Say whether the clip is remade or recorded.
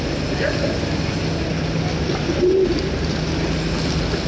recorded